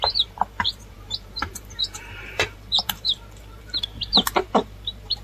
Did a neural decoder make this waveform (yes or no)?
yes